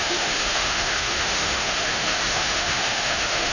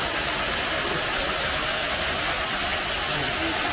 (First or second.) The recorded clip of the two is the second